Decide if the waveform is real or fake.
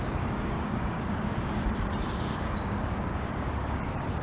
fake